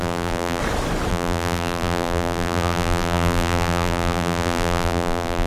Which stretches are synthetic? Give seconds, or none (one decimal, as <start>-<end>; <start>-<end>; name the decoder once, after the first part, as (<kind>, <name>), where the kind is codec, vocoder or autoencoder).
0.0-0.6 (vocoder, BigVGAN v2); 1.1-5.5